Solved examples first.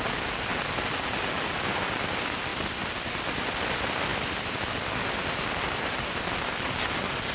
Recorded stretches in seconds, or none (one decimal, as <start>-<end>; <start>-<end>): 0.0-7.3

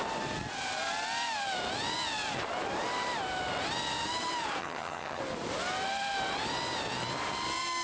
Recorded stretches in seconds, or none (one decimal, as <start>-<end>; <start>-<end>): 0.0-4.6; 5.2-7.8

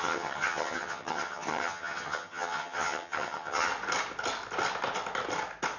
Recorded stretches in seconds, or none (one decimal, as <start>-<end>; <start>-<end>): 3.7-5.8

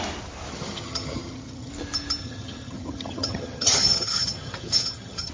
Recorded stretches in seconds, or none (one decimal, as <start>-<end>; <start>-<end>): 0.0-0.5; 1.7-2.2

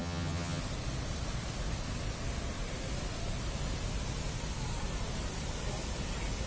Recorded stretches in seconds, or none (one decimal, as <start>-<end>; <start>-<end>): 0.6-6.5